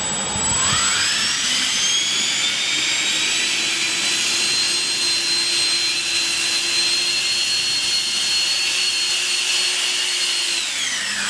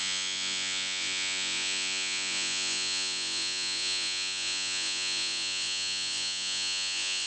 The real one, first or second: first